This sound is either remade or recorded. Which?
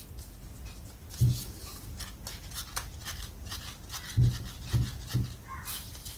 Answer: recorded